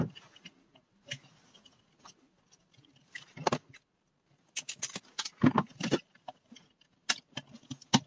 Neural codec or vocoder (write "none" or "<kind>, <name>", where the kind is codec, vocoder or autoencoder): none